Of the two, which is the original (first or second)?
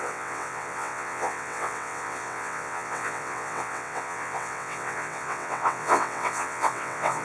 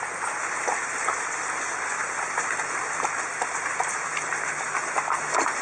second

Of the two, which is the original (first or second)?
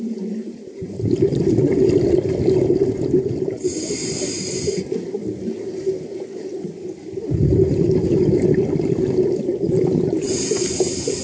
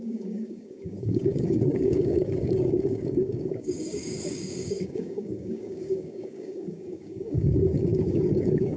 first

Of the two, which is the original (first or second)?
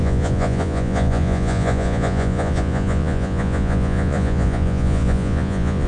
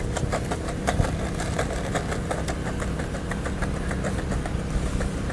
second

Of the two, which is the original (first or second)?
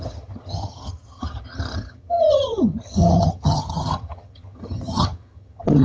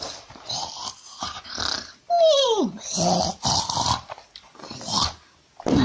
second